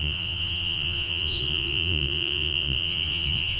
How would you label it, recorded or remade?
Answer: remade